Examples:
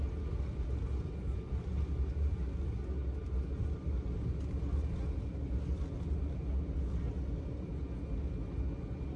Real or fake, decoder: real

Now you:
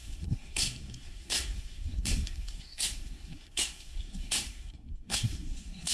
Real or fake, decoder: fake, codec, SNAC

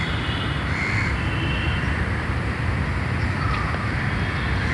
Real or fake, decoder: real